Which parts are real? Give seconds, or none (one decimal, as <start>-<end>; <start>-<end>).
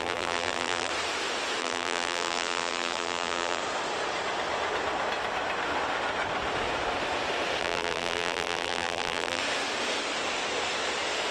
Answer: 0.9-1.6; 3.6-7.6; 9.4-11.3